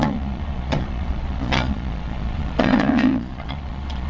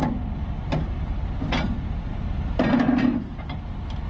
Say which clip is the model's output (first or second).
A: first